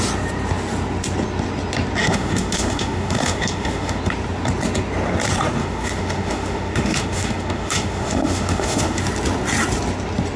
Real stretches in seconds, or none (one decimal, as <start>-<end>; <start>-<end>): 0.0-2.0; 4.0-5.6; 9.0-10.4